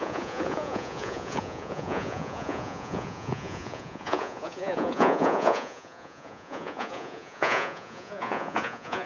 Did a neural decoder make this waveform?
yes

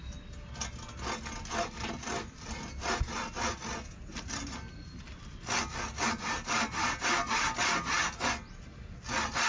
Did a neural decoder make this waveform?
no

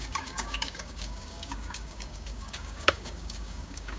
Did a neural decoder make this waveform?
yes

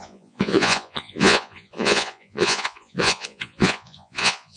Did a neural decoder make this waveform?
yes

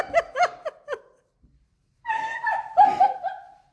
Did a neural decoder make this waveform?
yes